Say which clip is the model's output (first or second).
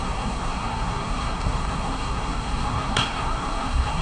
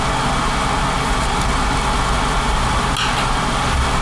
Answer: first